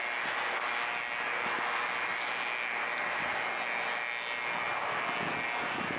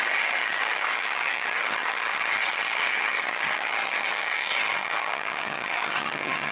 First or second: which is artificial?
second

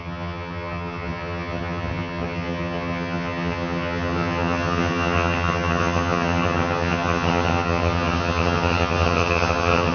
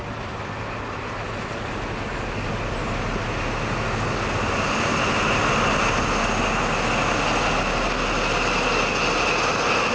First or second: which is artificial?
first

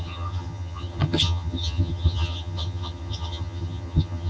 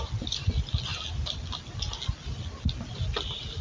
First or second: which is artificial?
first